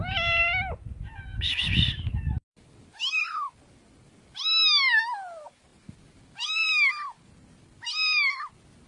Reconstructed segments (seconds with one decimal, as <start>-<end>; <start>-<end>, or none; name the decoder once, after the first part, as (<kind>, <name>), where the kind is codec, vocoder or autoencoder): none